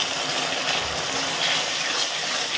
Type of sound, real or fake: real